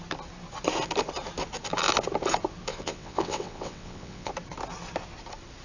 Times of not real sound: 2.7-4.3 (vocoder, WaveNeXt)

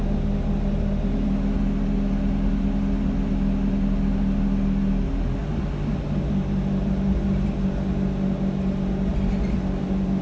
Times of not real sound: none

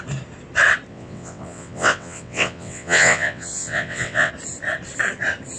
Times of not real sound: 0.9-4.3 (vocoder, WaveNeXt)

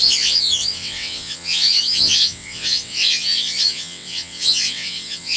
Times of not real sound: 0.0-5.4 (vocoder, WaveNeXt)

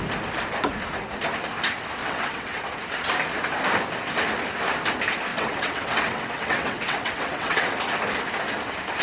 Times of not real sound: 2.0-2.6 (vocoder, WaveNeXt); 5.3-7.7

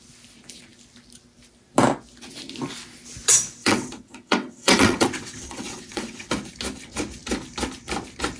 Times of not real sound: 3.6-6.3 (vocoder, WaveNeXt)